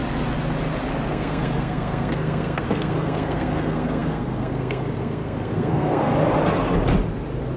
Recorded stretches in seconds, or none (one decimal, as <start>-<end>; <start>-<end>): 0.0-1.1; 6.1-7.6